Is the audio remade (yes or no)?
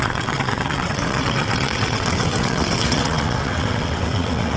yes